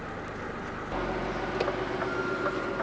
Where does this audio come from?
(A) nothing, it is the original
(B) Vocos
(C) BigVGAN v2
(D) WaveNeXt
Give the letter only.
A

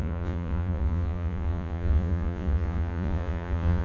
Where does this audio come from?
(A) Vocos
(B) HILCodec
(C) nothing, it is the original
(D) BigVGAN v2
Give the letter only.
A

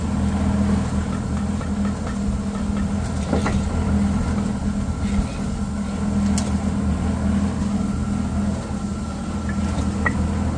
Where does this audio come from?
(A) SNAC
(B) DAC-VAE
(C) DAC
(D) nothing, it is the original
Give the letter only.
D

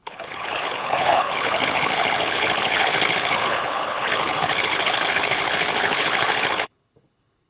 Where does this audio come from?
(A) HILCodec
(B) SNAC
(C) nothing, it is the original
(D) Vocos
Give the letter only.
A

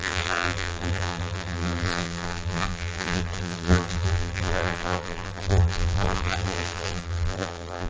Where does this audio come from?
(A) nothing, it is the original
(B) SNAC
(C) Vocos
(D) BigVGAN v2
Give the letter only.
D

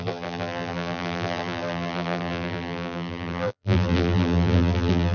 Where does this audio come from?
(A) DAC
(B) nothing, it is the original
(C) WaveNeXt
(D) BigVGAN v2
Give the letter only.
D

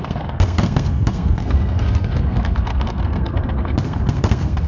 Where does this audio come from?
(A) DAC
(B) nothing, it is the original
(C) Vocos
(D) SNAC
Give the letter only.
D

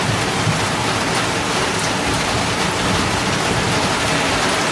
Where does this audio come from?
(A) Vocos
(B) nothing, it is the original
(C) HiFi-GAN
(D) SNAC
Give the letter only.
B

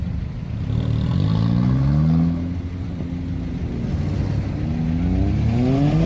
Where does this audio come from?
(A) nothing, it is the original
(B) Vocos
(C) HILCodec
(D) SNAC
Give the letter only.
A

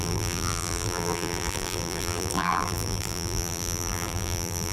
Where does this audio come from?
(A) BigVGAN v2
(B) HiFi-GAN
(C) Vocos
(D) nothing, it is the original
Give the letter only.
A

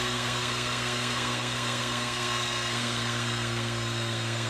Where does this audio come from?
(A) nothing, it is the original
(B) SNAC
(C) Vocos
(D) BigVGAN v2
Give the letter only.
B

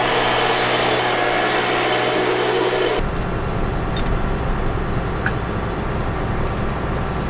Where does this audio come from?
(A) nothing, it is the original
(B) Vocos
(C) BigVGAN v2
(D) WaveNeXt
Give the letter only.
A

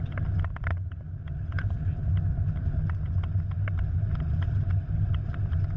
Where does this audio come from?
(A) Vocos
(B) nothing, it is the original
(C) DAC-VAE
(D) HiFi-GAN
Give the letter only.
B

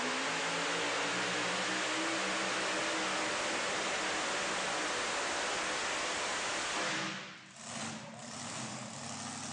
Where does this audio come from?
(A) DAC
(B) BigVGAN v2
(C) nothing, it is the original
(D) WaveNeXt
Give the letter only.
C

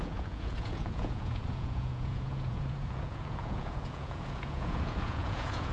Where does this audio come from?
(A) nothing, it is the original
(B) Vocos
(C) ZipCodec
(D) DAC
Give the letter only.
B